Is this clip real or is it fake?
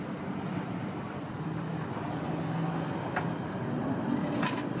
real